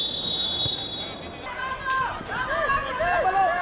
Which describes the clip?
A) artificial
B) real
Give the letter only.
B